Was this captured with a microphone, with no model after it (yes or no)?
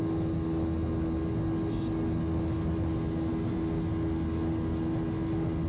yes